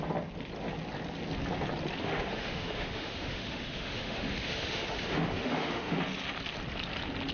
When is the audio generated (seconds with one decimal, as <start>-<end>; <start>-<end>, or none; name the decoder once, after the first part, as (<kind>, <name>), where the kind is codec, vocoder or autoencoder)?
2.0-6.0 (autoencoder, DAC-VAE)